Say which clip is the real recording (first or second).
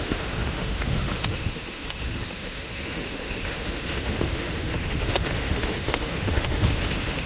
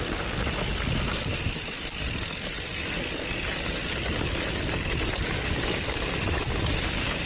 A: second